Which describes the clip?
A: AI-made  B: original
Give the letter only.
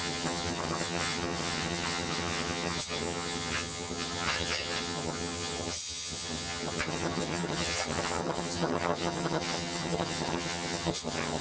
A